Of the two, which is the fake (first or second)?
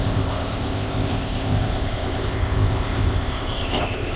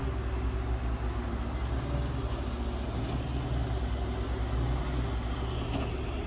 first